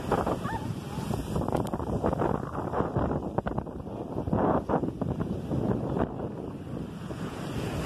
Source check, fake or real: real